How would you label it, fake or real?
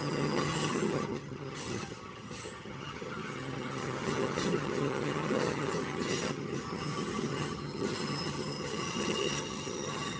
fake